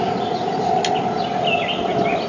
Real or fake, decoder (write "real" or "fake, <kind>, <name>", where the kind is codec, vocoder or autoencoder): real